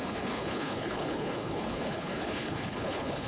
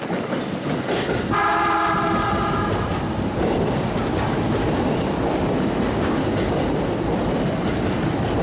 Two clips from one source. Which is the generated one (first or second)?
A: first